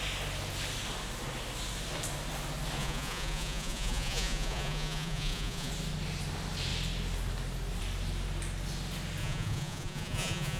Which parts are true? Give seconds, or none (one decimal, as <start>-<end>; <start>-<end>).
0.0-2.8; 5.7-9.2

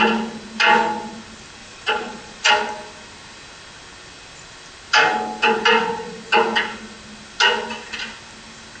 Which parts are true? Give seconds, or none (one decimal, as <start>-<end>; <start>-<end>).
0.0-1.6; 2.5-8.8